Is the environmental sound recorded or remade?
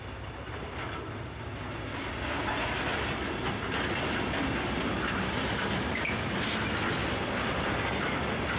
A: recorded